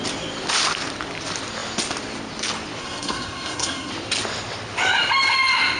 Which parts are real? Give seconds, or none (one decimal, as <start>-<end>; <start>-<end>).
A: 0.0-2.8; 3.9-5.8